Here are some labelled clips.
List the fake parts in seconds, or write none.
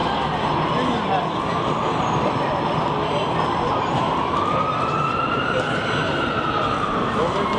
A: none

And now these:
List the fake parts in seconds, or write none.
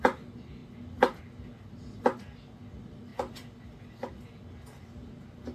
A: none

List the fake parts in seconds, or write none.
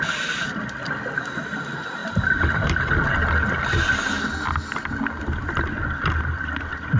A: none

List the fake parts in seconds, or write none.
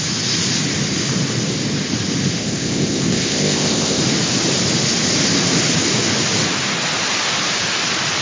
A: 2.4-4.0 (codec, ZipCodec)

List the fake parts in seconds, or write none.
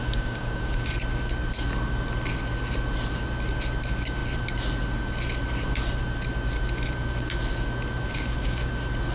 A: 0.0-0.9 (codec, DAC); 8.1-8.7